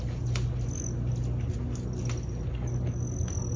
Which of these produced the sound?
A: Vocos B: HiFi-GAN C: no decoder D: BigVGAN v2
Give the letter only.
C